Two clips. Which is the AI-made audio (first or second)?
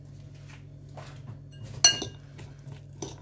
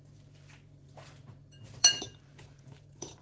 second